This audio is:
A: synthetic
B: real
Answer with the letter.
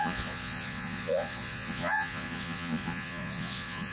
A